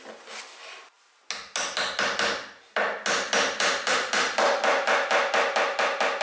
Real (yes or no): yes